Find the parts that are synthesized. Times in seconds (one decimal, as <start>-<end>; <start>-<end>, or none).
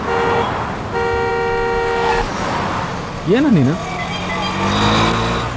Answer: none